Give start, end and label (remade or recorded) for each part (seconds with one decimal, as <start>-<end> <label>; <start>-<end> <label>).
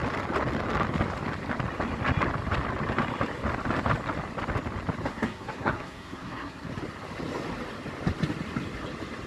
0.0-5.1 recorded; 5.1-6.7 remade; 6.7-9.3 recorded